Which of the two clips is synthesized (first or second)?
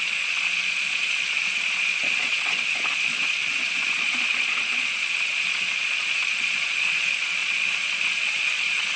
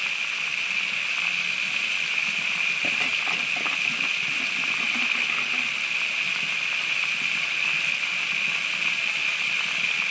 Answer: first